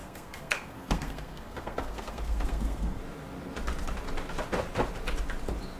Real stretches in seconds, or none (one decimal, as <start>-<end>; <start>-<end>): 3.0-5.8